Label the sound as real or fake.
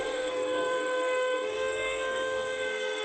fake